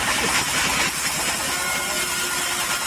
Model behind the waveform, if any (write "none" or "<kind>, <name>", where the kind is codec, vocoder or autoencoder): none